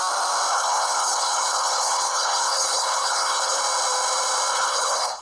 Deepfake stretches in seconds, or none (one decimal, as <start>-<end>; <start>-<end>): 0.5-3.6; 4.5-5.2